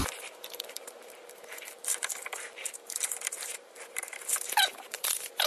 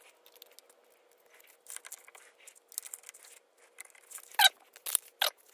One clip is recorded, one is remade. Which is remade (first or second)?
first